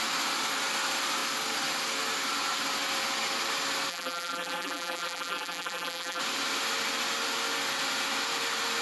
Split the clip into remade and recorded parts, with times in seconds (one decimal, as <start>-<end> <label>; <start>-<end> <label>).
0.0-3.9 recorded; 3.9-6.2 remade; 6.2-8.8 recorded